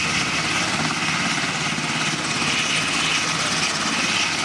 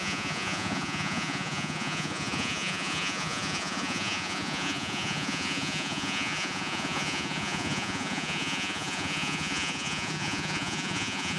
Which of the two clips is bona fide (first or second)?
first